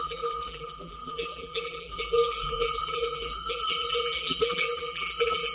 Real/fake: fake